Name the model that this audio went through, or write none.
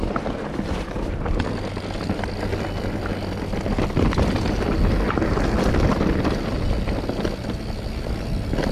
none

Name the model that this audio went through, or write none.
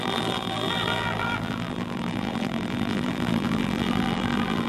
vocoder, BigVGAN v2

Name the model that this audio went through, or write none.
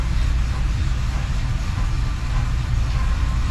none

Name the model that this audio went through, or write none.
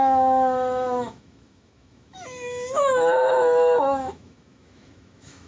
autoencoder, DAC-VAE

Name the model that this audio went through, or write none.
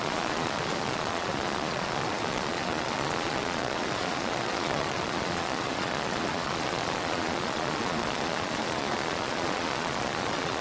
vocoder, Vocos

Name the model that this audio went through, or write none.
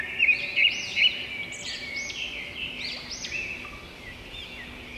none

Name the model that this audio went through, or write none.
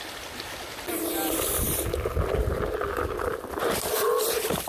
none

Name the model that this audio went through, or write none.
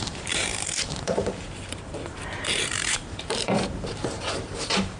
vocoder, BigVGAN v2